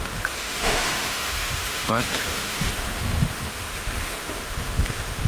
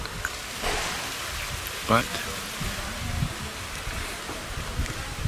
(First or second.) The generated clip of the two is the first